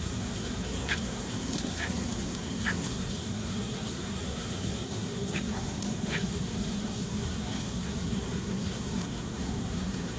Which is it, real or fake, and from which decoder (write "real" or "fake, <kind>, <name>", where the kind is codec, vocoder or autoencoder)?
fake, codec, SNAC